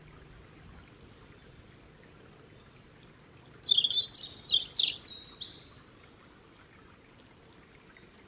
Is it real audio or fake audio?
real